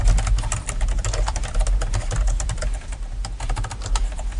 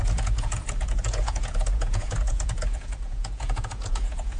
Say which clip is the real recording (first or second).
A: first